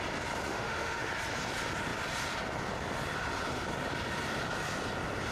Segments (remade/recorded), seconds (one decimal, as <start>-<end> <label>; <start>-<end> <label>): 0.0-0.5 recorded; 0.5-1.1 remade; 1.1-5.3 recorded